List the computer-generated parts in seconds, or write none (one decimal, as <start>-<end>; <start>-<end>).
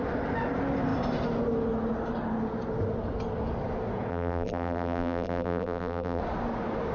4.1-6.2